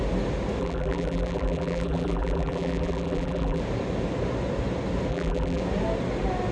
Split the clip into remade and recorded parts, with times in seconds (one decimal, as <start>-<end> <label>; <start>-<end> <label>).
0.0-0.6 recorded; 0.6-3.6 remade; 3.6-5.1 recorded; 5.1-5.6 remade; 5.6-6.5 recorded